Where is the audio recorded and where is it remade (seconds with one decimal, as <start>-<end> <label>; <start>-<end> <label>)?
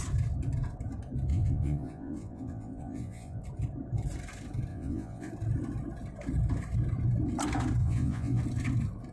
0.0-1.3 recorded; 1.3-3.4 remade; 3.4-4.7 recorded; 4.7-5.3 remade; 5.3-7.8 recorded; 7.8-8.4 remade; 8.4-9.1 recorded